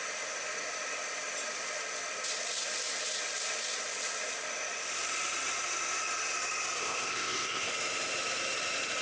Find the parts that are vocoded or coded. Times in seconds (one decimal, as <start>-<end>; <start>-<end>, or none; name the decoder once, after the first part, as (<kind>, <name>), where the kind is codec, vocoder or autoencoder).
6.8-7.7 (codec, ZipCodec)